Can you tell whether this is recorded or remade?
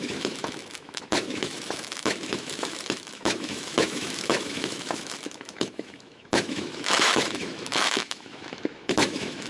remade